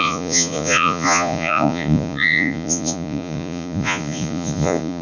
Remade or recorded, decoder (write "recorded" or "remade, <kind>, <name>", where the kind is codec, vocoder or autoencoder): remade, vocoder, Vocos